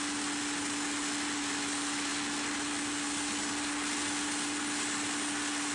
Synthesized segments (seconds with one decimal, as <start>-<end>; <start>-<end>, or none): none